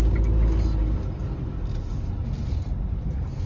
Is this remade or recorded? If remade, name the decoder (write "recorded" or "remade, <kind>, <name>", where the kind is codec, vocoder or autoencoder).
recorded